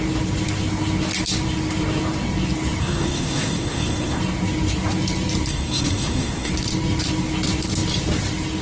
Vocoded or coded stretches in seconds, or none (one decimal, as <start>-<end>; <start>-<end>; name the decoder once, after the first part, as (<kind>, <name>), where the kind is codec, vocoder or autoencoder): 2.8-4.2 (codec, SNAC); 5.5-6.5